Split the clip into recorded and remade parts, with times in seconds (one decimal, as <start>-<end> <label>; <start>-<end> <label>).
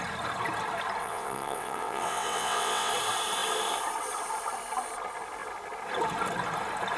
0.0-1.0 recorded; 1.0-2.9 remade; 2.9-7.0 recorded